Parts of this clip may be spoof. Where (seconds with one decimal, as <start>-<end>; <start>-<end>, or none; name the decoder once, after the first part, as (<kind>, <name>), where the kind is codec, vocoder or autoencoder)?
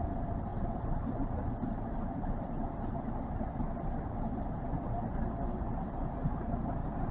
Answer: none